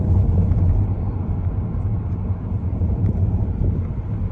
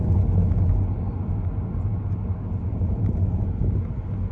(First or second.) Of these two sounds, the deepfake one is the first